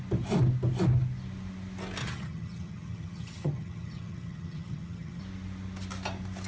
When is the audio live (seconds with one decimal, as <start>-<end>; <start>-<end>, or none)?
0.0-2.0; 5.2-6.5

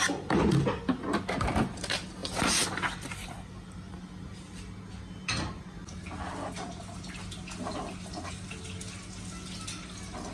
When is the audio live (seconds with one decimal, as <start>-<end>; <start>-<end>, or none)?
0.0-10.3